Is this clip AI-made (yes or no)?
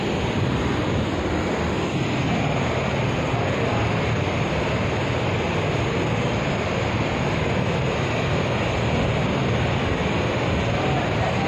no